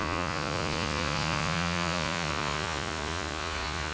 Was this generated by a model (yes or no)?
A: yes